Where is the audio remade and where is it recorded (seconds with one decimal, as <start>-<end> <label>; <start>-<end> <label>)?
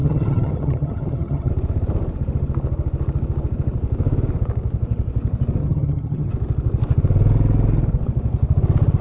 0.0-1.5 remade; 1.5-5.6 recorded; 5.6-6.3 remade; 6.3-9.0 recorded